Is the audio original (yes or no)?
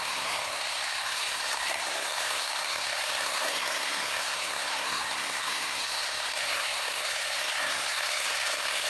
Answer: no